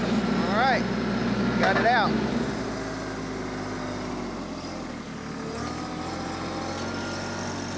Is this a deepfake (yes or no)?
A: no